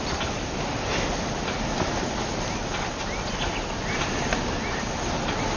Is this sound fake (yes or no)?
no